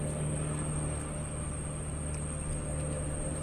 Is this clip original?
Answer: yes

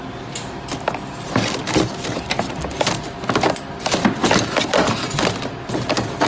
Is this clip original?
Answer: yes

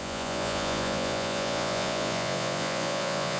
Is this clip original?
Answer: no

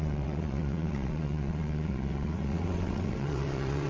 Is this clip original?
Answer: no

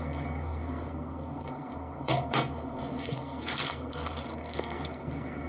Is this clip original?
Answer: no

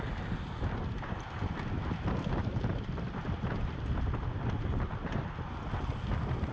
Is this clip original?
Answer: yes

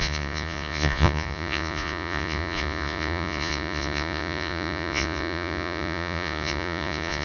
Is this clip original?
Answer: no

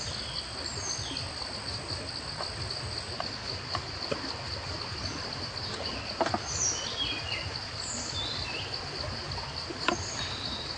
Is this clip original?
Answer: yes